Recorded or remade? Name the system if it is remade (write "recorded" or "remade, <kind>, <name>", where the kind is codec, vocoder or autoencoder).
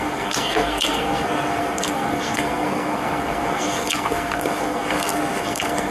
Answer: remade, codec, SNAC